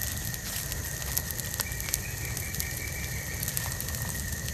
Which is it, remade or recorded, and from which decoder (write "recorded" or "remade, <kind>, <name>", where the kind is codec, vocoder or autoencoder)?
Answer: recorded